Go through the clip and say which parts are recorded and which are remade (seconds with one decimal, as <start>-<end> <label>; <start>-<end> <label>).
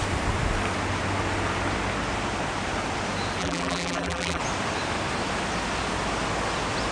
0.0-3.4 recorded; 3.4-4.4 remade; 4.4-6.9 recorded